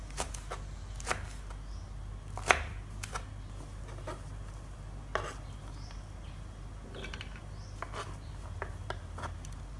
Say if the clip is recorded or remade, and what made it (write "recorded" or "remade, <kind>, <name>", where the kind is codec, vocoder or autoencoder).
recorded